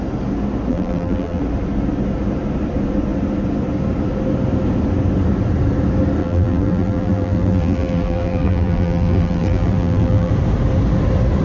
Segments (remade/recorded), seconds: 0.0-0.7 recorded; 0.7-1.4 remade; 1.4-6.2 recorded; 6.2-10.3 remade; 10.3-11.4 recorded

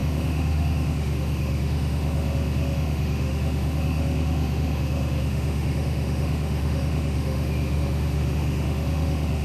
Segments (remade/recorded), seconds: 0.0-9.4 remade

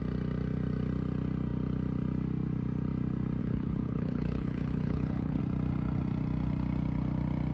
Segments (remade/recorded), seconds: 0.0-3.4 recorded; 3.4-5.4 remade; 5.4-7.5 recorded